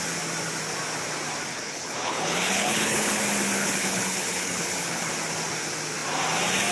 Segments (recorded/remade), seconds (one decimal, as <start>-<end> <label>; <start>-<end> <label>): 0.0-1.5 recorded; 1.5-3.2 remade; 3.2-3.6 recorded; 3.6-5.1 remade; 5.1-6.7 recorded